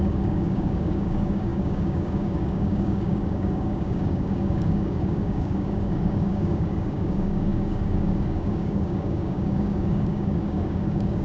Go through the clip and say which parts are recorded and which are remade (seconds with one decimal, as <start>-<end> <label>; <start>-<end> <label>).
0.0-11.2 remade